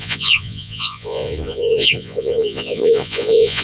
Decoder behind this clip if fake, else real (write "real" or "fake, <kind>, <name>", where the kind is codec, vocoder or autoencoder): fake, vocoder, Vocos